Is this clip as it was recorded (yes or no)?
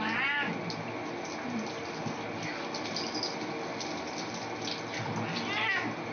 yes